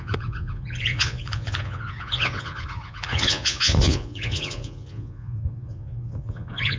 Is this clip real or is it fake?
fake